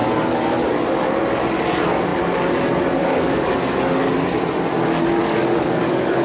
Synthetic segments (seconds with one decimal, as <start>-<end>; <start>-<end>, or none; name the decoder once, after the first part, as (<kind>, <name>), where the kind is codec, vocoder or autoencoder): 3.0-3.5 (codec, DAC); 5.2-6.2